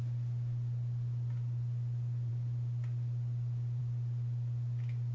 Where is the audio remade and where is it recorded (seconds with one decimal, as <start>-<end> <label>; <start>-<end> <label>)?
0.0-5.1 recorded